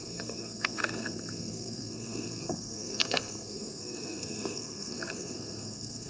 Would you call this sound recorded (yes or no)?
no